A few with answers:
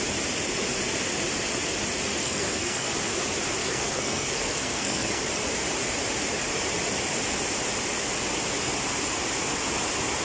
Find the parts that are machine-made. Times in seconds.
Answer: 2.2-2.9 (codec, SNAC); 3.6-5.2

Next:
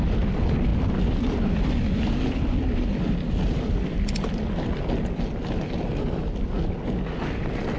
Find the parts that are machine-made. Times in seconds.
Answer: none

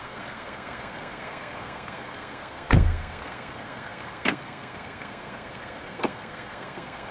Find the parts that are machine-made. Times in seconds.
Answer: 0.0-7.1 (codec, SNAC)

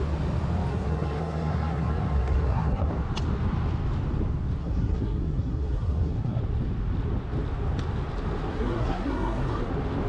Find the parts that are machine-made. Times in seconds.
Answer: 0.7-2.9 (codec, SNAC); 4.6-6.4; 8.5-9.7

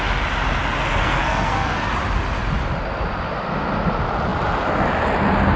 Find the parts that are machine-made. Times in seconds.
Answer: 1.0-1.9 (codec, SNAC)

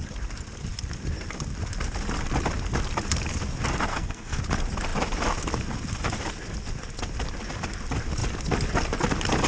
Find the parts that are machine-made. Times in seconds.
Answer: 3.9-4.4 (codec, SNAC)